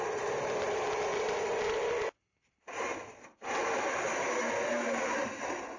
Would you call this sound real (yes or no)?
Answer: yes